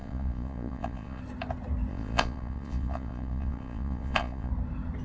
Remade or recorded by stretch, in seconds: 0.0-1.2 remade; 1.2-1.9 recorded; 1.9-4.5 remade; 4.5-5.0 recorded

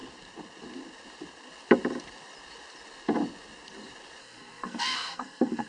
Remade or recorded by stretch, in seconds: 0.0-4.2 recorded; 4.2-5.7 remade

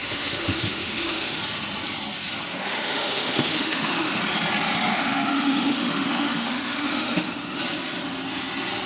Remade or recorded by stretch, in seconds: 0.0-1.4 remade; 1.4-2.5 recorded; 2.5-4.2 remade; 4.2-4.9 recorded; 4.9-7.6 remade; 7.6-8.9 recorded

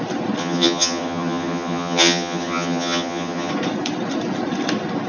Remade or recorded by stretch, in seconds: 0.0-0.4 recorded; 0.4-3.5 remade; 3.5-5.1 recorded